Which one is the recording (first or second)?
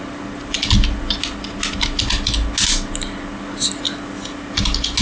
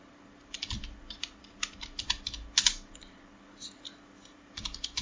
first